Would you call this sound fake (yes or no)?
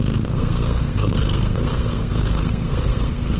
yes